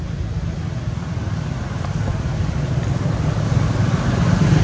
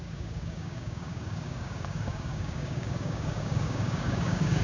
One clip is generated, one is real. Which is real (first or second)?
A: first